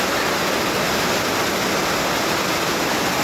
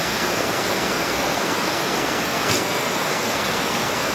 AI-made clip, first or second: second